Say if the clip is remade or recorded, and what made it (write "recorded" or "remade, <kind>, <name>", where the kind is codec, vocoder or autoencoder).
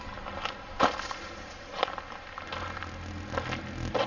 recorded